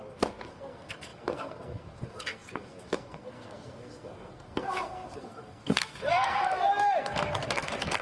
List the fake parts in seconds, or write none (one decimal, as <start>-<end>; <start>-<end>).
0.0-8.0